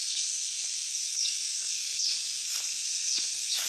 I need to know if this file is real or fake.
fake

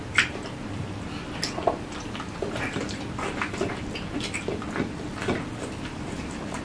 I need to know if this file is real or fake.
real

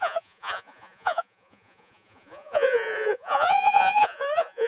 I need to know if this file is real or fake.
fake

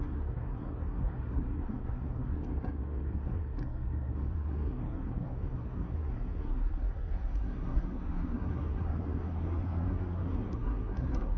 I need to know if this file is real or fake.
fake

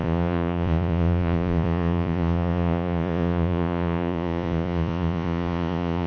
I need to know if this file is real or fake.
fake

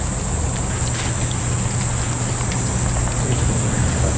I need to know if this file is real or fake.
real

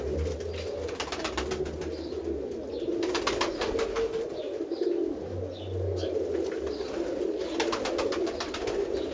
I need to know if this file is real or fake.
real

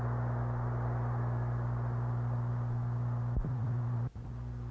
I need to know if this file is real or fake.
real